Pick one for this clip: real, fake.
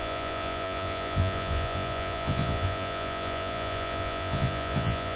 fake